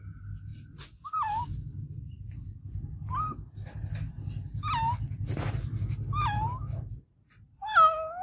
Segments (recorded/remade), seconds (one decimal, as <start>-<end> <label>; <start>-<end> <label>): 0.0-8.2 recorded